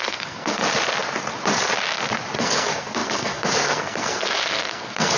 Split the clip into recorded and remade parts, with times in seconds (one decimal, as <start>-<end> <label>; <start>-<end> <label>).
0.0-0.6 remade; 0.6-2.4 recorded; 2.4-5.2 remade